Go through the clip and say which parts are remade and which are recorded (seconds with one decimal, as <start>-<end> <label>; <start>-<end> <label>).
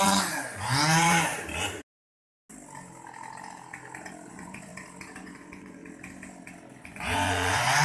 0.0-1.3 remade; 1.3-4.3 recorded; 4.3-4.7 remade; 4.7-5.2 recorded; 5.2-5.8 remade; 5.8-6.8 recorded; 6.8-7.8 remade